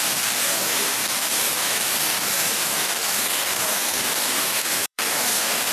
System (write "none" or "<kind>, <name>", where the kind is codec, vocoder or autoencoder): codec, DAC